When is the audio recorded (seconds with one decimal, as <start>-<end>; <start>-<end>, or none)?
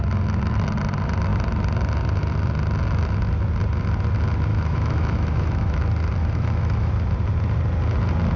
0.0-4.5; 5.8-6.2; 6.9-8.4